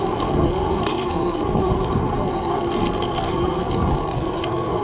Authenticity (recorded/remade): remade